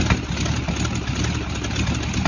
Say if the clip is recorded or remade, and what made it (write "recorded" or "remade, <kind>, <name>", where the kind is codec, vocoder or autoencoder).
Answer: recorded